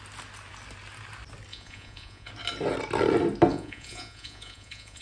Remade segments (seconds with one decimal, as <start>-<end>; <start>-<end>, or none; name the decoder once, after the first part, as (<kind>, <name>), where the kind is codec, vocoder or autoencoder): 1.5-2.3 (vocoder, Vocos); 3.5-5.0